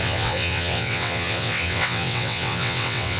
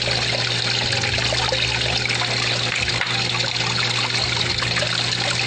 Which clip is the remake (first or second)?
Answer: first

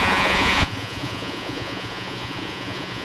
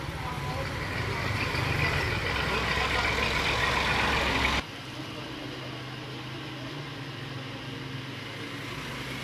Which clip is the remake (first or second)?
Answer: first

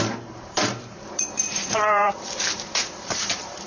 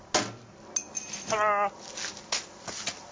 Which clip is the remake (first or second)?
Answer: first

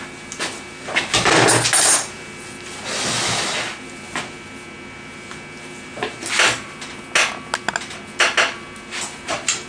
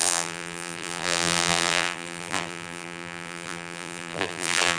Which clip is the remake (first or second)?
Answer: second